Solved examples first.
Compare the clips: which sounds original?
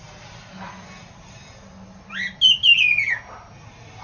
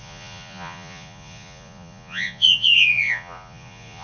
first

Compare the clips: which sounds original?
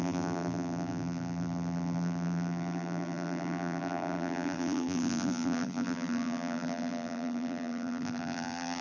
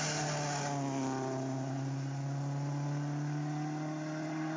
second